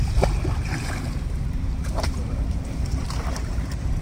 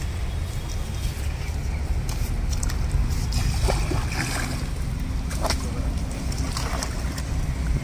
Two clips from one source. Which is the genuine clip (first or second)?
second